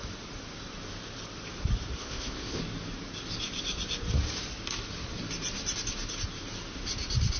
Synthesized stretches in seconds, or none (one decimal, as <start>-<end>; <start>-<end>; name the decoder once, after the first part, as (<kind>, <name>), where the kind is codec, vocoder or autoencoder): 2.0-2.6 (codec, ZipCodec)